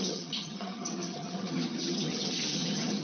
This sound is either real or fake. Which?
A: fake